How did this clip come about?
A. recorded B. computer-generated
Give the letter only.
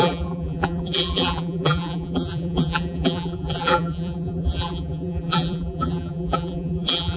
B